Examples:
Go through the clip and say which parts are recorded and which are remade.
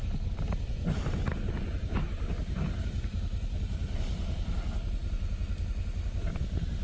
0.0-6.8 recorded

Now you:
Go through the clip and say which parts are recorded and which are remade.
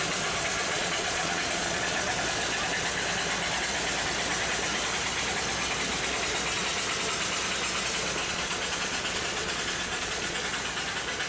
0.0-0.6 recorded; 0.6-2.1 remade; 2.1-8.2 recorded; 8.2-10.4 remade; 10.4-11.3 recorded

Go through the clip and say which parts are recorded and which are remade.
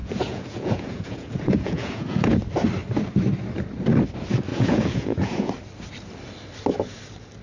0.0-2.4 remade; 2.4-4.5 recorded; 4.5-5.5 remade; 5.5-7.4 recorded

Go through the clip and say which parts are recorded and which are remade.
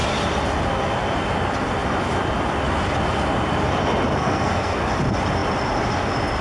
0.0-4.1 recorded; 4.1-4.8 remade; 4.8-6.4 recorded